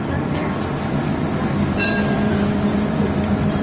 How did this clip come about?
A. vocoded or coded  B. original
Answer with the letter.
A